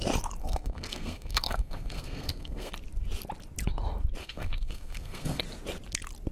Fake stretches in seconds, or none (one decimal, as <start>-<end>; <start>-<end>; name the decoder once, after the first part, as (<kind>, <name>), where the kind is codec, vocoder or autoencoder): 0.4-2.7 (codec, SNAC); 4.2-5.4